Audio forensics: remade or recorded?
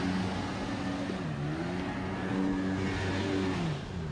recorded